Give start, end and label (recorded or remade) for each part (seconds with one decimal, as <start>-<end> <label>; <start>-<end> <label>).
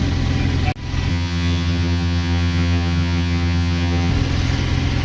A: 0.0-1.1 recorded; 1.1-4.1 remade; 4.1-5.0 recorded